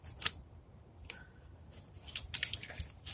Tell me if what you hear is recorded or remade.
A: recorded